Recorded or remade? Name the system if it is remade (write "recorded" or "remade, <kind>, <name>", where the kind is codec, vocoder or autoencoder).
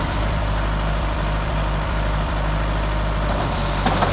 remade, vocoder, BigVGAN v2